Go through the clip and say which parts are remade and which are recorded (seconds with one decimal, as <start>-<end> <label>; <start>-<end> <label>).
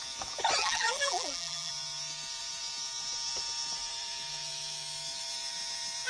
0.0-0.6 recorded; 0.6-1.7 remade; 1.7-6.1 recorded